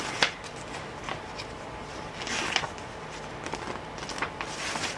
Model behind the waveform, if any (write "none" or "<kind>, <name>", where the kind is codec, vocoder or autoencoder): none